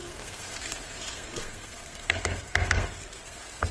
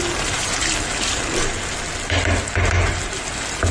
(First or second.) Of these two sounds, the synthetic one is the first